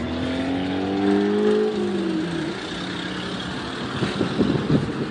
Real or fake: real